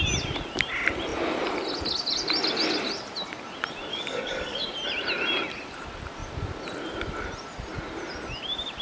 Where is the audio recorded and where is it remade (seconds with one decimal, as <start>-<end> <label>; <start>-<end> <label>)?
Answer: 0.0-3.9 recorded; 3.9-4.7 remade; 4.7-8.8 recorded